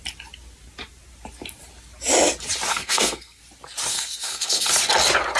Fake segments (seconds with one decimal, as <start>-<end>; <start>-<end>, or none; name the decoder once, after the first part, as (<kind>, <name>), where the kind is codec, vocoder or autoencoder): 2.7-3.4 (codec, SNAC); 3.9-4.7